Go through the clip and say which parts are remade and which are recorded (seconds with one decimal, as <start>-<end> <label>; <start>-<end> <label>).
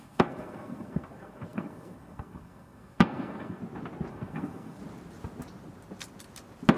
0.0-3.6 remade; 3.6-4.1 recorded; 4.1-4.8 remade; 4.8-6.8 recorded